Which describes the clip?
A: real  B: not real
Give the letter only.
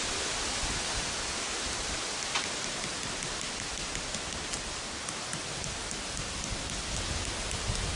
A